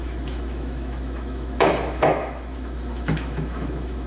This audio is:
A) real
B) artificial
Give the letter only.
B